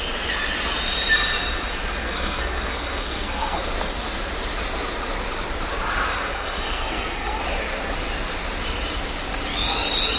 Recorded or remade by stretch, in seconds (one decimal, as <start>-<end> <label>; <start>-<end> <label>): 0.0-2.0 recorded; 2.0-3.6 remade; 3.6-6.1 recorded; 6.1-7.4 remade; 7.4-10.2 recorded